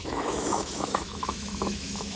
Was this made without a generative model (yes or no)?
no